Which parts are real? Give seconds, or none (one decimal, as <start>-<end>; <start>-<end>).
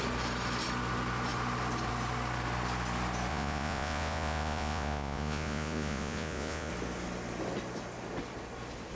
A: 0.0-3.3; 6.7-9.0